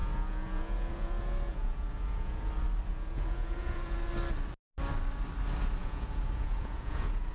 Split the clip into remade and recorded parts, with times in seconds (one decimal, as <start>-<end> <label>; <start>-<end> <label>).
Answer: 0.0-2.5 remade; 2.5-2.9 recorded; 2.9-4.1 remade; 4.1-5.8 recorded; 5.8-7.3 remade